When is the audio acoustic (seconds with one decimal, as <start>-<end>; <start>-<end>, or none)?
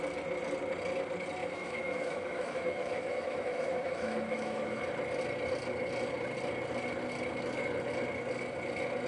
0.0-1.4; 4.8-9.1